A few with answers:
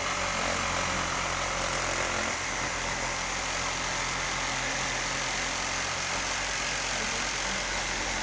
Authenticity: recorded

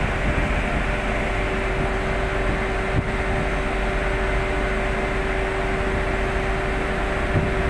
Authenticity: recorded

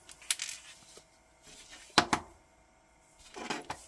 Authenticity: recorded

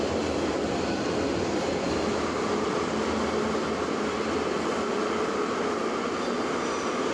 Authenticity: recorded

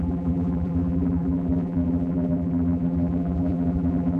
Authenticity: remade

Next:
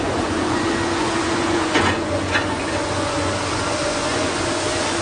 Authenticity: remade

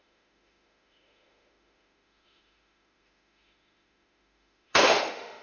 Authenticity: remade